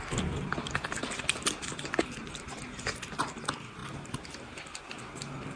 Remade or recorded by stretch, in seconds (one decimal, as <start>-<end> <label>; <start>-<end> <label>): 0.0-5.6 recorded